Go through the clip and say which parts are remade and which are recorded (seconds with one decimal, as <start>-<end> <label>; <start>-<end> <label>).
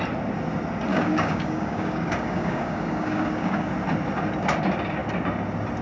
0.0-0.9 recorded; 0.9-3.7 remade; 3.7-5.8 recorded